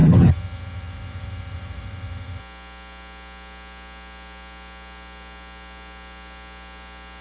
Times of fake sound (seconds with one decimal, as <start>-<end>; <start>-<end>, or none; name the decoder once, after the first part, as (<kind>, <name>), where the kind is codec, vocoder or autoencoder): 0.0-2.4 (vocoder, HiFi-GAN)